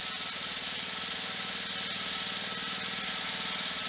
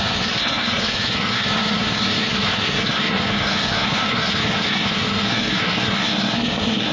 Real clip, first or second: first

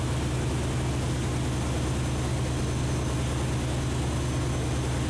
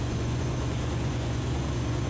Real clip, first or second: first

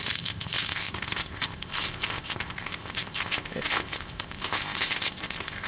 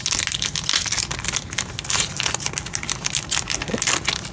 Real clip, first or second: second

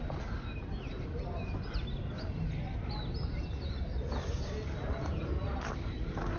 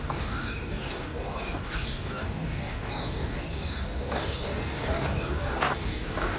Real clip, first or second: first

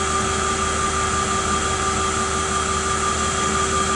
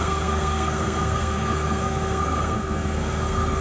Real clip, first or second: first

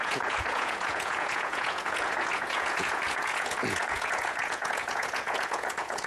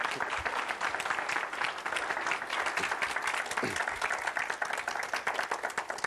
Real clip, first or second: second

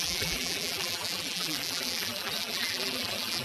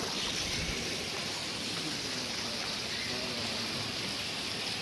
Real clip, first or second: second